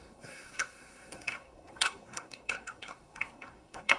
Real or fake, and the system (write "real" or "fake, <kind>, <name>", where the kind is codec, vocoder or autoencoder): fake, codec, SNAC